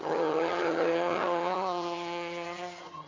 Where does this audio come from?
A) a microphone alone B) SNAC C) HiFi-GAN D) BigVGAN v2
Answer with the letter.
C